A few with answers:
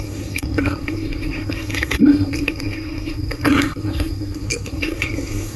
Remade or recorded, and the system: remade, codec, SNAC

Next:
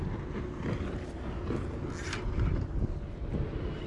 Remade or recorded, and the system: recorded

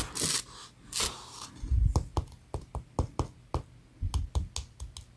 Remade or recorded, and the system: recorded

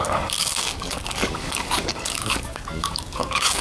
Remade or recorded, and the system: remade, codec, DAC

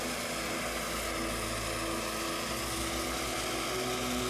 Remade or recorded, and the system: recorded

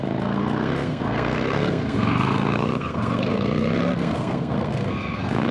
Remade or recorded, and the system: remade, codec, SNAC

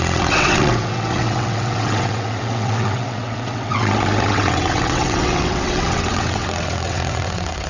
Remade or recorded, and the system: remade, vocoder, WaveNeXt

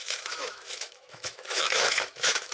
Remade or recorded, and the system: remade, autoencoder, DAC-VAE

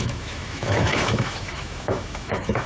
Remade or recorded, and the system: remade, autoencoder, DAC-VAE